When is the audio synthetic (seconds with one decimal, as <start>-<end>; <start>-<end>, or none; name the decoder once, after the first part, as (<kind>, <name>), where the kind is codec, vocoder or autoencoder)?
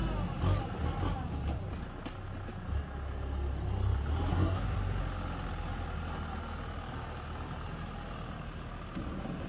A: 4.3-5.0 (codec, SNAC)